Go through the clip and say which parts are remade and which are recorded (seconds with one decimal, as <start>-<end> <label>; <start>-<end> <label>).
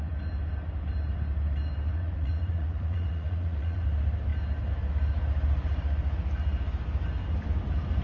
0.0-1.9 recorded; 1.9-3.8 remade; 3.8-8.0 recorded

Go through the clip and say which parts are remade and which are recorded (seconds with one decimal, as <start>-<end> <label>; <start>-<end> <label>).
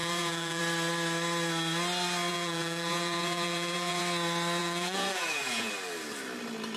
0.0-0.6 remade; 0.6-2.3 recorded; 2.3-4.0 remade; 4.0-4.6 recorded; 4.6-5.7 remade; 5.7-6.8 recorded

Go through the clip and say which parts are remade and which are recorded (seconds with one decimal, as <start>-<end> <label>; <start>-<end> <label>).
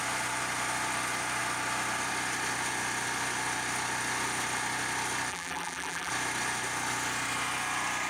0.0-5.3 recorded; 5.3-6.1 remade; 6.1-8.1 recorded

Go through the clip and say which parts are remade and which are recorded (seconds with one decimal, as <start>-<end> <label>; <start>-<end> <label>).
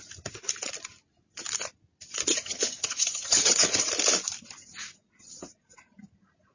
0.0-2.3 recorded; 2.3-3.9 remade; 3.9-6.5 recorded